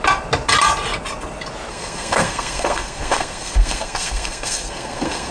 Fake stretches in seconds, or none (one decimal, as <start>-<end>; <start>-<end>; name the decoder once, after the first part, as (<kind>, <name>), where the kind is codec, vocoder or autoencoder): 1.7-5.3 (codec, SNAC)